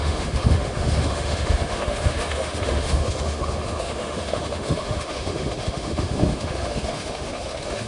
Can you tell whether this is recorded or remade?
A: remade